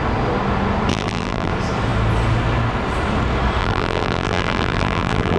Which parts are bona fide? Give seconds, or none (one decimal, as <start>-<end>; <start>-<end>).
0.0-0.9; 1.5-3.6